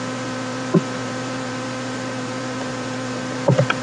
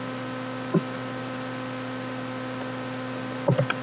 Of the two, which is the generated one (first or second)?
first